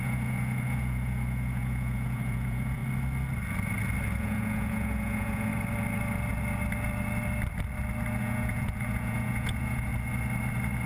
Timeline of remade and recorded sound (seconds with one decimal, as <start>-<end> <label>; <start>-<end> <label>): 0.0-2.8 remade; 2.8-4.2 recorded; 4.2-5.5 remade; 5.5-8.2 recorded; 8.2-9.9 remade; 9.9-10.9 recorded